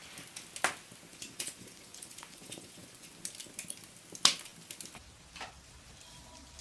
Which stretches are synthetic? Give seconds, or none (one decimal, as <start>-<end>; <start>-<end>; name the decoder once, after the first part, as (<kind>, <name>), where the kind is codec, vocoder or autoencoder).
1.1-3.2 (vocoder, Vocos)